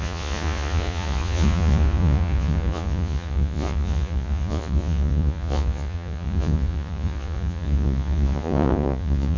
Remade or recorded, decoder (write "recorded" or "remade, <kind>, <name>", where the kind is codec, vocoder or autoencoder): remade, vocoder, Vocos